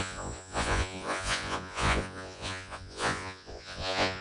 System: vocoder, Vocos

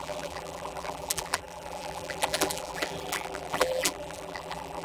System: vocoder, BigVGAN v2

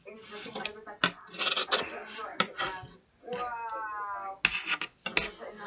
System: none